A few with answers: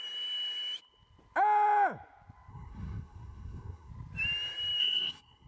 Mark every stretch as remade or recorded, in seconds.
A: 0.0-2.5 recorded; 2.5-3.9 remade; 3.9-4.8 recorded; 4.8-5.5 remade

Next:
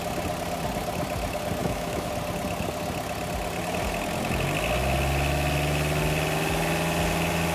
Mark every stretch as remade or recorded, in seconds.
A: 0.0-1.6 recorded; 1.6-2.1 remade; 2.1-7.5 recorded

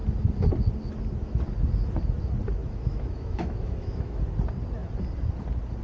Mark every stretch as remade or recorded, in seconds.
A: 0.0-2.6 recorded; 2.6-4.2 remade; 4.2-5.8 recorded

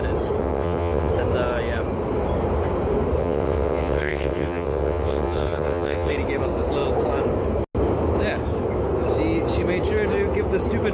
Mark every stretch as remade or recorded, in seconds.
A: 0.0-0.4 recorded; 0.4-1.1 remade; 1.1-3.2 recorded; 3.2-6.1 remade; 6.1-10.9 recorded

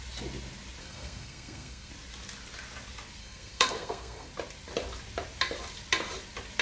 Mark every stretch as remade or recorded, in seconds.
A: 0.0-0.8 recorded; 0.8-1.9 remade; 1.9-3.2 recorded; 3.2-4.3 remade; 4.3-6.6 recorded

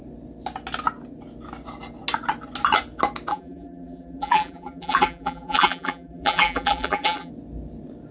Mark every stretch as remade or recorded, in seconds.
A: 0.0-3.3 recorded; 3.3-7.3 remade; 7.3-8.1 recorded

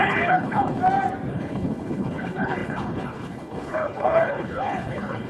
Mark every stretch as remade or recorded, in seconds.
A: 0.0-0.8 remade; 0.8-1.3 recorded; 1.3-5.3 remade

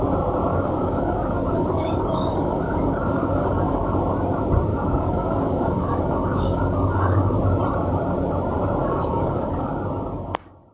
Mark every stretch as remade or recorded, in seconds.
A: 0.0-0.5 recorded; 0.5-3.9 remade; 3.9-4.7 recorded; 4.7-7.4 remade; 7.4-8.8 recorded; 8.8-9.7 remade; 9.7-10.7 recorded